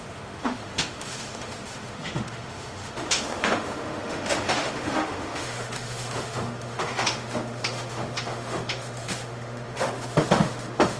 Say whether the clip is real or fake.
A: fake